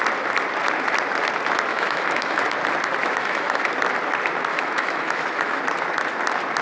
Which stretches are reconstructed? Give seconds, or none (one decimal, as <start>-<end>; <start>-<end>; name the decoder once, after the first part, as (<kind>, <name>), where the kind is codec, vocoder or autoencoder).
1.7-2.5 (autoencoder, DAC-VAE); 3.0-3.7; 4.5-5.6